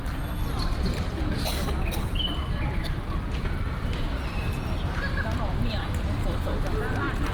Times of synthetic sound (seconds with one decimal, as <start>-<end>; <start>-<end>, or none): 1.5-5.9